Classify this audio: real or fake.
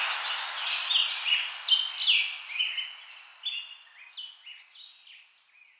real